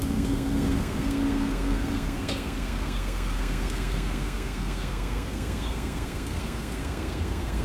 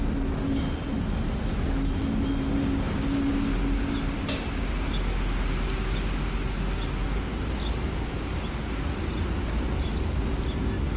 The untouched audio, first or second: second